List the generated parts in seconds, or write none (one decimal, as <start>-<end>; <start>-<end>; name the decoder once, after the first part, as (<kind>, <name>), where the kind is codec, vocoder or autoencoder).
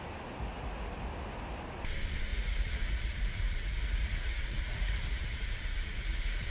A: 2.3-6.5 (vocoder, Vocos)